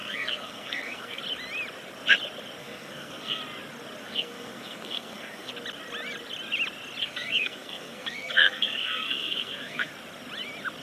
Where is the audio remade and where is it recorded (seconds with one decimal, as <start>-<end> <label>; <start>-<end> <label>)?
0.0-1.2 remade; 1.2-2.6 recorded; 2.6-3.4 remade; 3.4-4.0 recorded; 4.0-5.5 remade; 5.5-7.0 recorded; 7.0-9.9 remade; 9.9-10.8 recorded